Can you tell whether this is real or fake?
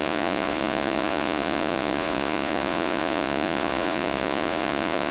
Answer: fake